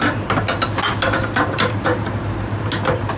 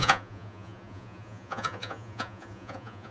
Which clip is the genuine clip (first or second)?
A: first